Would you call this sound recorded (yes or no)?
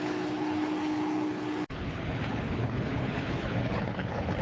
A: no